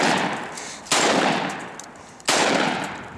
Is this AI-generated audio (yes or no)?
no